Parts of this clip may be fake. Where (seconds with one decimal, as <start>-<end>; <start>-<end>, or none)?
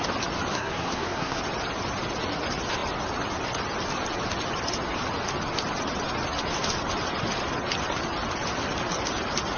0.5-1.4